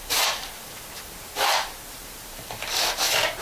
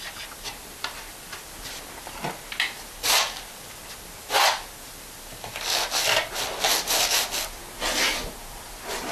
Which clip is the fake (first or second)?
first